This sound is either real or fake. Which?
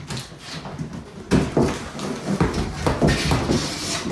real